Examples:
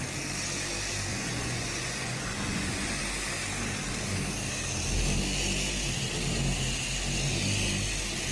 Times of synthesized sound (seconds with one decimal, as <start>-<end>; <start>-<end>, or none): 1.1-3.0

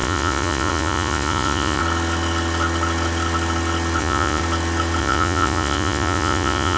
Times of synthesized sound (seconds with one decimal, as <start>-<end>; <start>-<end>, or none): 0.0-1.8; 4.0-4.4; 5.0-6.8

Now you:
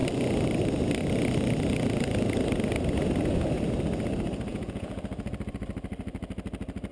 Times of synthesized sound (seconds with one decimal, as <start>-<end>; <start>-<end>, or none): 4.5-5.0

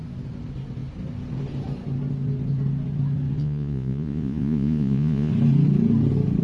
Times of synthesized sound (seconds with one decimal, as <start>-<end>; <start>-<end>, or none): 3.4-5.3